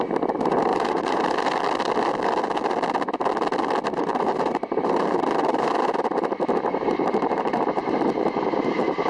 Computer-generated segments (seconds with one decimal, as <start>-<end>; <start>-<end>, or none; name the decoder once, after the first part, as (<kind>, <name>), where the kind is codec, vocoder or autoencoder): 0.7-1.2 (vocoder, BigVGAN v2); 4.1-5.7; 6.7-9.1

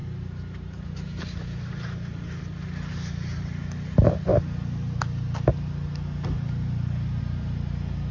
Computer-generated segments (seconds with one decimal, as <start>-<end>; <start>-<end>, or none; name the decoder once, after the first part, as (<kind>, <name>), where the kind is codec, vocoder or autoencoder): 0.0-4.3 (vocoder, BigVGAN v2); 7.2-8.1

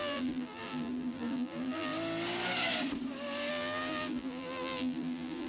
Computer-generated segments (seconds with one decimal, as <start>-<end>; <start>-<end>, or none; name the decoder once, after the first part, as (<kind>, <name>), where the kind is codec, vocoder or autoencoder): 0.0-1.9 (vocoder, BigVGAN v2); 3.5-5.5

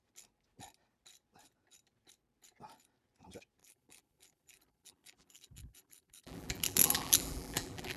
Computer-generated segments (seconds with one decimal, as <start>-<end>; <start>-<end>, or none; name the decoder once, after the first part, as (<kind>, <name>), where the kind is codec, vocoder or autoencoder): 3.6-8.0 (vocoder, BigVGAN v2)

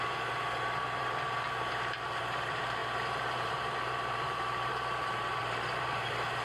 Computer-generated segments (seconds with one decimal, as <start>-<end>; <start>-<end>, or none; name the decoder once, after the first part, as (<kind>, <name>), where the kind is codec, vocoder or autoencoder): 0.0-6.4 (vocoder, BigVGAN v2)

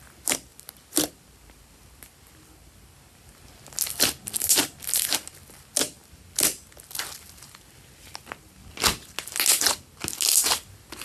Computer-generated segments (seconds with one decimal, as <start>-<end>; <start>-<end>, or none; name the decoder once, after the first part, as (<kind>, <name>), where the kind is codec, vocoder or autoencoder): 0.5-1.1 (vocoder, BigVGAN v2)